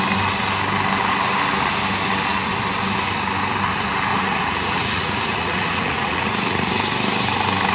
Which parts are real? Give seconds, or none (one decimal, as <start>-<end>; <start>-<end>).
0.0-4.1; 6.7-7.7